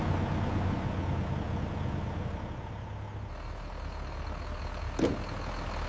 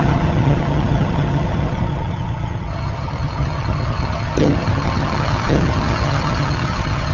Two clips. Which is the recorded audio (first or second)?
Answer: first